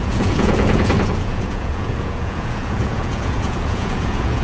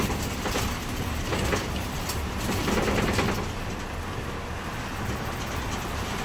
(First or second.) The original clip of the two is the second